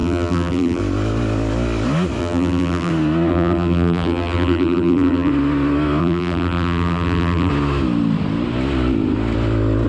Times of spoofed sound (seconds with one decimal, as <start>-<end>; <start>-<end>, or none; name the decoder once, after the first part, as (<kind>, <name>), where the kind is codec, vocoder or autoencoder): 0.0-0.8 (vocoder, BigVGAN v2); 2.2-2.9; 3.3-5.3; 6.0-7.5